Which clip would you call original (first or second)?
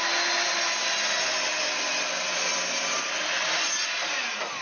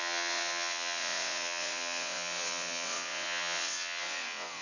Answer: first